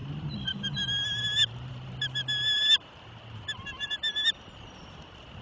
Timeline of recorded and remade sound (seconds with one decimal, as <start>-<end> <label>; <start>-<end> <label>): 0.0-5.4 recorded